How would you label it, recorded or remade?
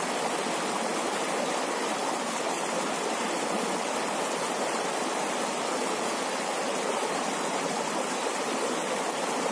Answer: recorded